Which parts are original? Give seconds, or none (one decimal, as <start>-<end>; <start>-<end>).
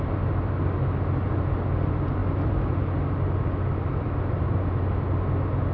0.0-5.7